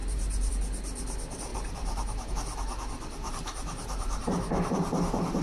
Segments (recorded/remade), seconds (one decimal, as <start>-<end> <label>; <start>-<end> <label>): 0.0-0.5 remade; 0.5-1.5 recorded; 1.5-2.3 remade; 2.3-3.2 recorded; 3.2-5.4 remade